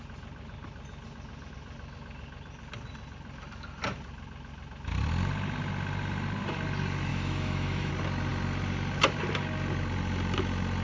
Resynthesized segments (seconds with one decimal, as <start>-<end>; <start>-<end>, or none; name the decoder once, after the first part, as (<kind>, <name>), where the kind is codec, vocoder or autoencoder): 7.1-7.9 (autoencoder, DAC-VAE)